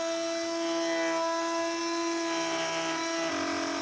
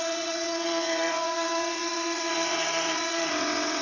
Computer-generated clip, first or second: second